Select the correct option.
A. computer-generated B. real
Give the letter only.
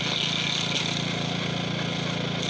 B